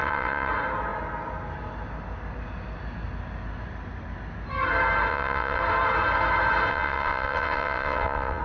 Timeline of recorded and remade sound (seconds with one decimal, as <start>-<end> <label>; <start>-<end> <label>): 0.0-0.5 remade; 0.5-5.1 recorded; 5.1-5.6 remade; 5.6-6.7 recorded; 6.7-8.4 remade